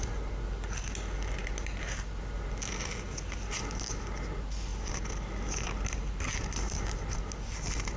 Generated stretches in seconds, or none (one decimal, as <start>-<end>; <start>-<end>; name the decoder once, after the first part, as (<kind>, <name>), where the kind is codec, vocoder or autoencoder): none